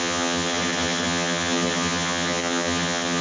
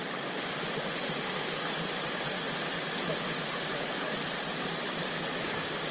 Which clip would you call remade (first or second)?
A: first